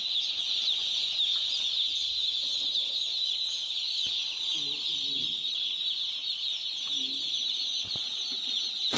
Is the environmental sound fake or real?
real